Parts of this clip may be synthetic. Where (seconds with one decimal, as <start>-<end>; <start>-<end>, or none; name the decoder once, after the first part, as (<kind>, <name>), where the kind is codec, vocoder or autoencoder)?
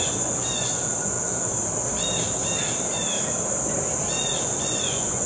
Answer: 0.0-1.5 (vocoder, Vocos); 4.4-5.3